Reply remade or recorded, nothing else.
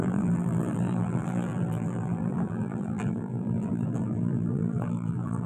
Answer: remade